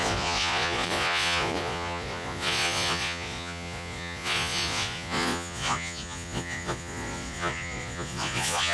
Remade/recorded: remade